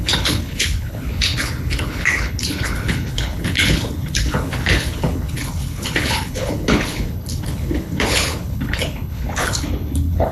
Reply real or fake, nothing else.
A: fake